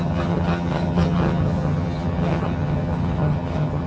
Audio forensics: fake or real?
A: fake